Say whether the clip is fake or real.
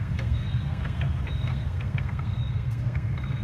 fake